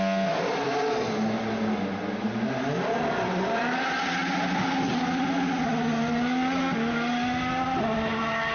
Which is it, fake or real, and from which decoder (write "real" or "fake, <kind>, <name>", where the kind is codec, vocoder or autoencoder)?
real